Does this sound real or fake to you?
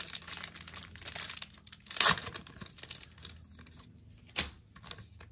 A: real